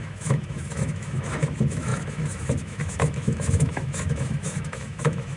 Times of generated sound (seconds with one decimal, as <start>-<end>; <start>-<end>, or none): 0.0-5.4